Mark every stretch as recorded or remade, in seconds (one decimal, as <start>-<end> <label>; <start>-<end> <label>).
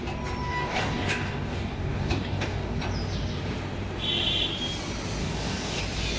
0.0-0.5 recorded; 0.5-2.8 remade; 2.8-5.2 recorded; 5.2-5.8 remade; 5.8-6.2 recorded